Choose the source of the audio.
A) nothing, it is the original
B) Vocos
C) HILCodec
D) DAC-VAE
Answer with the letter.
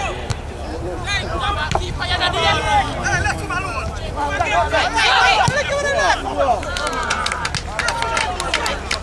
A